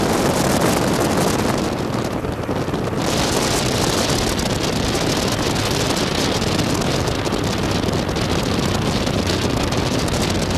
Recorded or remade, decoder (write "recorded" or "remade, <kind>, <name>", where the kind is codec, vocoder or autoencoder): recorded